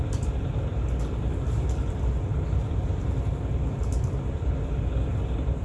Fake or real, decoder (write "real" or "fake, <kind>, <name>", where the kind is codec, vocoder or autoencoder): real